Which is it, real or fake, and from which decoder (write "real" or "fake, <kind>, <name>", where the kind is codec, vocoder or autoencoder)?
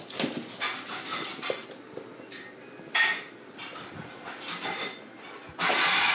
real